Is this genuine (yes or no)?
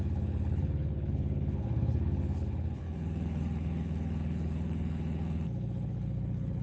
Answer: no